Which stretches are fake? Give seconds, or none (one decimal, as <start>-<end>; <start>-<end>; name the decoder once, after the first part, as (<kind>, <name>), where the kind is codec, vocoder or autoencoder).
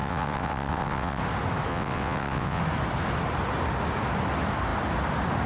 0.0-1.2 (vocoder, WaveNeXt); 1.7-2.6